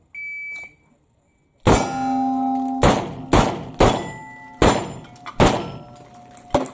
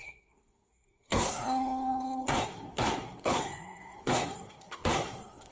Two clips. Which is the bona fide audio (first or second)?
first